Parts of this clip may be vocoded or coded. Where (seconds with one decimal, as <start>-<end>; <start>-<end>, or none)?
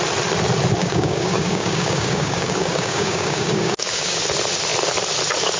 0.8-4.2